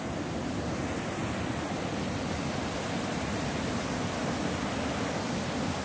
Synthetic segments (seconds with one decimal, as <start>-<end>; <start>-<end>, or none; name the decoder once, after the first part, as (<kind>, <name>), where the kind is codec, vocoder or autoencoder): none